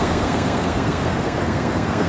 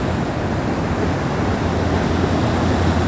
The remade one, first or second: first